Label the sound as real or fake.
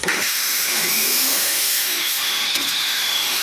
fake